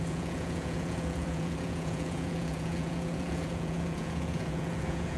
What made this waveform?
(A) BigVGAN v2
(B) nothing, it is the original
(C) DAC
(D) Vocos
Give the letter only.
D